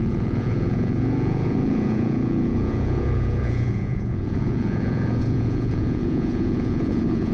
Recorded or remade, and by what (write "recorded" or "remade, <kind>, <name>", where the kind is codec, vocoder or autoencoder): remade, vocoder, Vocos